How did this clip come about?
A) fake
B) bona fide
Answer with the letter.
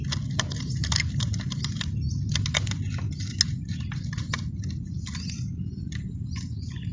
B